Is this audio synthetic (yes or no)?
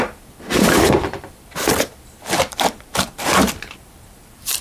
yes